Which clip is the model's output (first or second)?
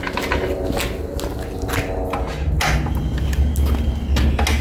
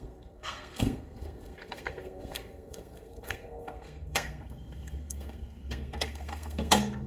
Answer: second